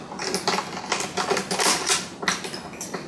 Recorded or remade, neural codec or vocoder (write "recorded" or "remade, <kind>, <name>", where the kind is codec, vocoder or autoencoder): recorded